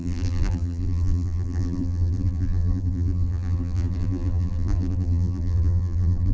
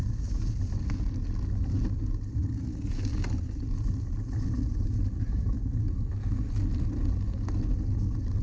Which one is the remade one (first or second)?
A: first